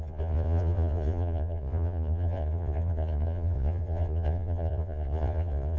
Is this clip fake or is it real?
fake